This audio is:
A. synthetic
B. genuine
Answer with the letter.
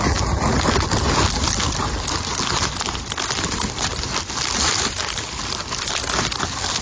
B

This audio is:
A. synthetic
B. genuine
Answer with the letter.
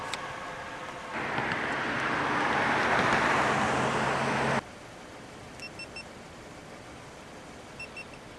B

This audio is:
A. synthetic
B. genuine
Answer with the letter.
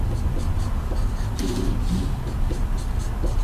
B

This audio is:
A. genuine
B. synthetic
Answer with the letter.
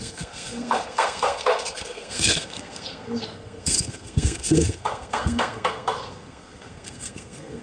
B